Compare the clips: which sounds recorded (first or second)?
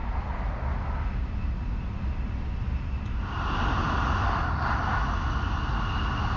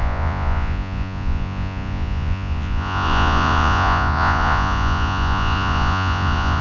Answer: first